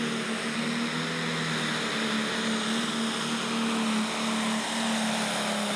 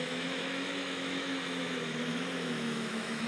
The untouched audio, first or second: first